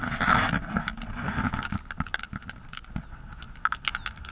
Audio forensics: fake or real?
real